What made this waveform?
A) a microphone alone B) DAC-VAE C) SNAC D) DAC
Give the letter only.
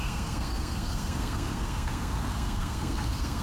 C